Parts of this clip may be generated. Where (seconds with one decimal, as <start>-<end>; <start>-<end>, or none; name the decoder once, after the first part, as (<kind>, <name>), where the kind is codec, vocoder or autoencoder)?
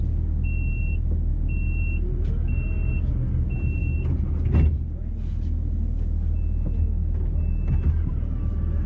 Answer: none